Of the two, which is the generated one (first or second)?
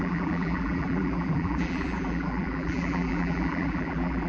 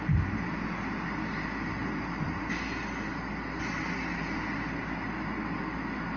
first